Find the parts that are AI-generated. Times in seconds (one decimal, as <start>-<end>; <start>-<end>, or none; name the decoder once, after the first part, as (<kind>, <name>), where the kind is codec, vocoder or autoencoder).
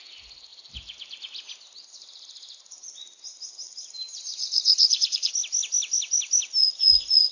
4.3-5.3 (vocoder, Vocos); 6.6-7.3